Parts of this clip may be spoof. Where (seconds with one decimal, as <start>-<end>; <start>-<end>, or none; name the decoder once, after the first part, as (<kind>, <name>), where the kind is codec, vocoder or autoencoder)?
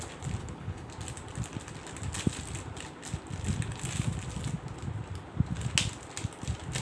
0.4-0.9 (codec, HILCodec)